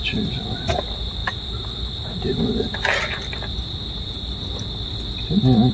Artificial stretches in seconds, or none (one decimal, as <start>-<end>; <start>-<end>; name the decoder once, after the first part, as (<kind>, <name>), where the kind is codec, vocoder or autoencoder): none